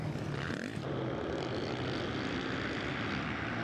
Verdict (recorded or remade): recorded